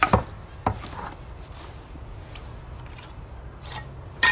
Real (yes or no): yes